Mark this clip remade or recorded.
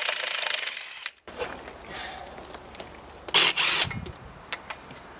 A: recorded